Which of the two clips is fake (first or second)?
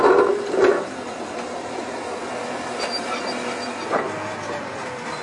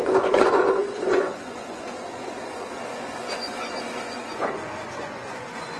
second